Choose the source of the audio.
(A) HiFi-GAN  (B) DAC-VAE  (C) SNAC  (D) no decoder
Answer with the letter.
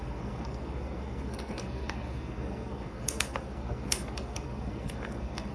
C